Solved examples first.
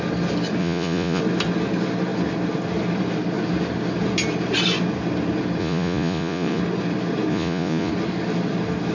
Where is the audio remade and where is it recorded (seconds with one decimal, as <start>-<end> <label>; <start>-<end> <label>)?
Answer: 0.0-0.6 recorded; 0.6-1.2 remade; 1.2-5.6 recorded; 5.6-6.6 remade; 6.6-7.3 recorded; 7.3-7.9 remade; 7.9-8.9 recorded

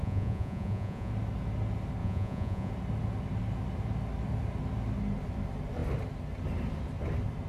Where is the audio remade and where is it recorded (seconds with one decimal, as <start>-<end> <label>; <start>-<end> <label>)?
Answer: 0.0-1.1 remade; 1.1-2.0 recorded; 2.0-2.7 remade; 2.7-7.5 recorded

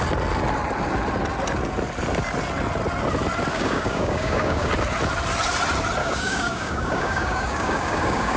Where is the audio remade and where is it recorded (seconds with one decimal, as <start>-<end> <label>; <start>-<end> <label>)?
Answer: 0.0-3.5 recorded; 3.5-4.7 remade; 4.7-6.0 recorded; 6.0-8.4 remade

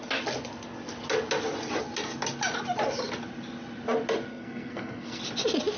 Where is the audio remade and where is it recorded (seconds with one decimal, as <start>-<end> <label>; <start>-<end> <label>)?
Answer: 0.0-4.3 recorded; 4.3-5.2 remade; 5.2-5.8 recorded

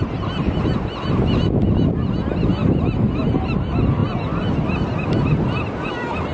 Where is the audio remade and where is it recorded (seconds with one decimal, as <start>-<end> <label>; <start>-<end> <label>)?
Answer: 0.0-6.3 recorded

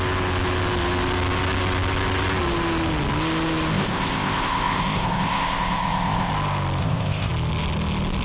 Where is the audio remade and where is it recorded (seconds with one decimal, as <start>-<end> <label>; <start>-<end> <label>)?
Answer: 0.0-3.7 recorded; 3.7-6.3 remade; 6.3-6.8 recorded; 6.8-7.3 remade; 7.3-8.2 recorded